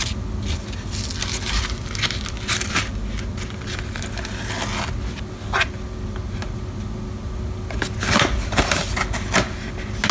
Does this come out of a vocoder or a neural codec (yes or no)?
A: no